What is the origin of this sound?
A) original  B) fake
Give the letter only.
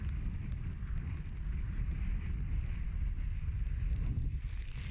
A